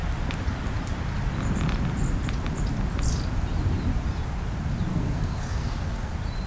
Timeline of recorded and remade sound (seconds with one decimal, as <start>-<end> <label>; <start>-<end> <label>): 0.0-4.9 recorded; 4.9-6.1 remade; 6.1-6.5 recorded